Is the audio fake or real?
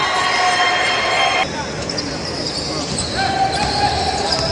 real